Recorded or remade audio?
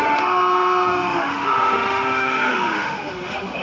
remade